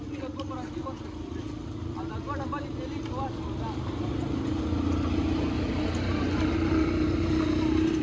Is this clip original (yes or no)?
yes